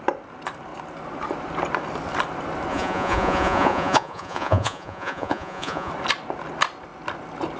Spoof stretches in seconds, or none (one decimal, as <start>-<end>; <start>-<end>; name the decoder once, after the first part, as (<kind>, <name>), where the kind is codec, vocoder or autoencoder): 2.7-5.9 (vocoder, Vocos)

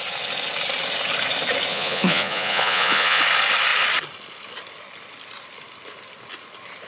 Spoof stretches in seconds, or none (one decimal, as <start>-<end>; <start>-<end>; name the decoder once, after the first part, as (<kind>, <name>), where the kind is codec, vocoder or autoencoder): 1.7-3.2 (vocoder, Vocos)